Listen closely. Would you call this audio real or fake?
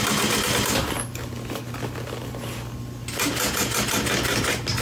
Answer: real